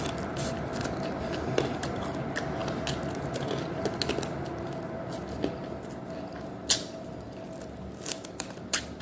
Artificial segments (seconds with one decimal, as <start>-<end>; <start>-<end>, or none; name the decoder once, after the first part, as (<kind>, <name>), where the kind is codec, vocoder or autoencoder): 0.0-2.6 (vocoder, BigVGAN v2); 7.8-9.0